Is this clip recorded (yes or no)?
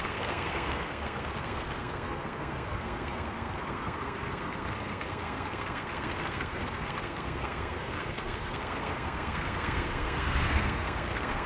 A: no